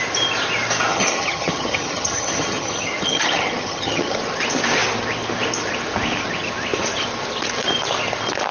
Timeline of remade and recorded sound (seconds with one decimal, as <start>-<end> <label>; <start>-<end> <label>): 0.0-0.9 recorded; 0.9-4.2 remade; 4.2-8.5 recorded